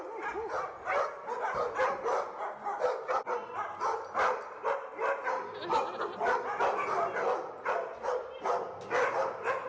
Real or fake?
real